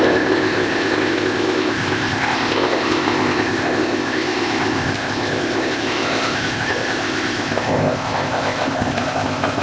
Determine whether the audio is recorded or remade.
remade